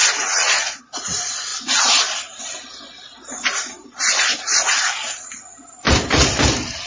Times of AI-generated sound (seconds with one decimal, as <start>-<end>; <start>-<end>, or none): 0.0-0.8; 4.3-5.5